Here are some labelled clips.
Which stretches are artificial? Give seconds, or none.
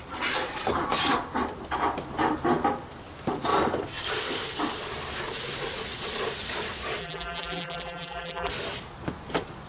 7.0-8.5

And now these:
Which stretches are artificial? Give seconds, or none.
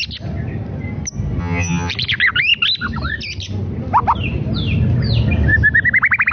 1.4-1.9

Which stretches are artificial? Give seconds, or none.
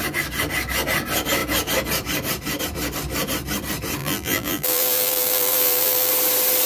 4.0-6.1